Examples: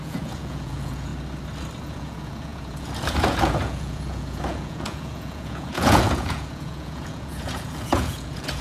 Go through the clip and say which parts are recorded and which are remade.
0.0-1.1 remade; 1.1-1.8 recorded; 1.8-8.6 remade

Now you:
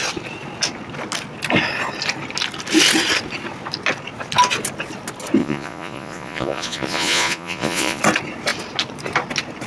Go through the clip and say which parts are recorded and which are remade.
0.0-5.4 recorded; 5.4-8.0 remade; 8.0-9.7 recorded

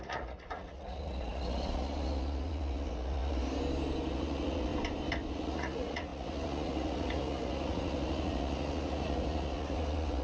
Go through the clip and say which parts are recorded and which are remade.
0.0-3.4 remade; 3.4-4.1 recorded; 4.1-4.7 remade; 4.7-5.3 recorded; 5.3-10.2 remade